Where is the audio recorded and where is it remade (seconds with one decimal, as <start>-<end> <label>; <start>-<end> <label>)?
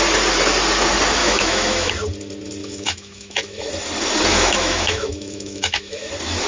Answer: 0.0-1.2 recorded; 1.2-1.9 remade; 1.9-2.6 recorded; 2.6-3.7 remade; 3.7-4.3 recorded; 4.3-6.1 remade; 6.1-6.5 recorded